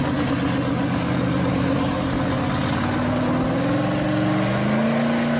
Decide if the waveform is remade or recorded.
recorded